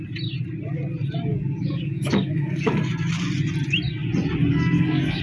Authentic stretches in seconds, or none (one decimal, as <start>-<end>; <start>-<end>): 0.0-1.3; 2.8-4.5